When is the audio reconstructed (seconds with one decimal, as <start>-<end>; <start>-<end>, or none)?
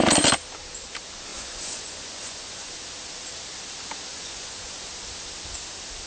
1.3-2.7; 4.1-4.9